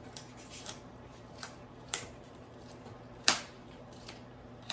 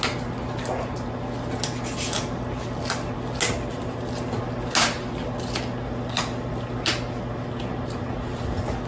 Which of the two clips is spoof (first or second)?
first